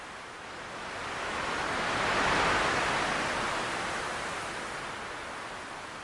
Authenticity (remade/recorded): recorded